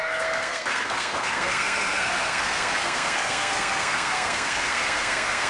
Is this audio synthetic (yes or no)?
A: yes